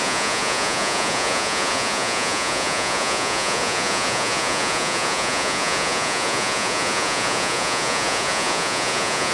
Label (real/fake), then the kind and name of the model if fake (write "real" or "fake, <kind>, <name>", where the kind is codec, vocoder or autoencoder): fake, vocoder, Vocos